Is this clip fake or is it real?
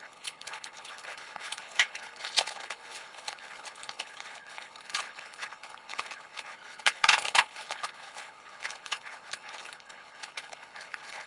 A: fake